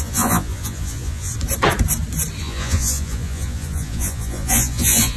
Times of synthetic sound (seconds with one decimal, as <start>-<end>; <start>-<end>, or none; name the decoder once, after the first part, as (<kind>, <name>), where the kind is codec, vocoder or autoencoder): 0.0-1.3 (vocoder, Vocos); 2.4-5.2